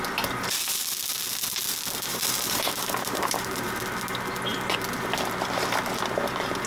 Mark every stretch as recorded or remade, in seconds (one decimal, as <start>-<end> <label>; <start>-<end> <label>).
0.0-2.1 recorded; 2.1-3.8 remade; 3.8-6.7 recorded